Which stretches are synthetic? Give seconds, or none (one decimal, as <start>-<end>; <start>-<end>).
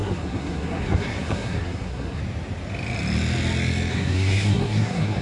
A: 0.0-2.2; 3.9-5.2